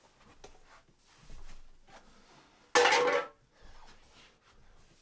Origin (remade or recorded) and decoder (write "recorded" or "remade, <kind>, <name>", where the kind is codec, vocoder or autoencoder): recorded